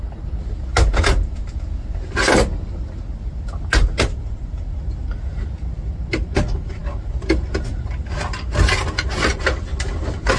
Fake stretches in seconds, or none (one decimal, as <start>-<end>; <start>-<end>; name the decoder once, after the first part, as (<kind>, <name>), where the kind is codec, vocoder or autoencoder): none